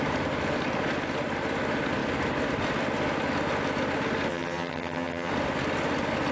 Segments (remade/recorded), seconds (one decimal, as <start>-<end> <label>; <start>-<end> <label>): 0.0-4.3 recorded; 4.3-5.3 remade; 5.3-6.3 recorded